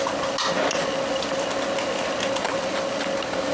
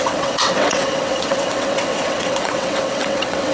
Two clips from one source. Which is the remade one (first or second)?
second